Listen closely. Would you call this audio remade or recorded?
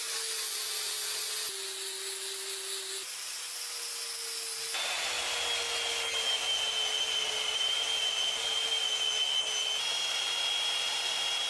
recorded